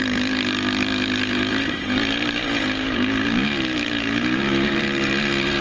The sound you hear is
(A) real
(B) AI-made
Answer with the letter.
B